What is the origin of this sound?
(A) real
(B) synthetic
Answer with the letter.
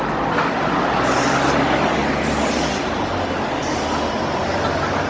A